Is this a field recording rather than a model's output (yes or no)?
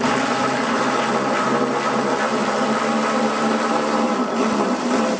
no